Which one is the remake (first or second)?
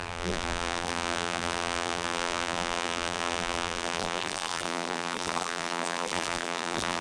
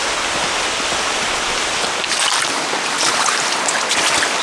first